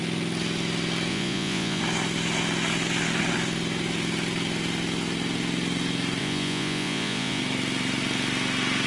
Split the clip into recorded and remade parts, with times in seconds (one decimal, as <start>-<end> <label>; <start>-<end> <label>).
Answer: 0.0-1.1 recorded; 1.1-1.8 remade; 1.8-6.2 recorded; 6.2-7.4 remade; 7.4-8.9 recorded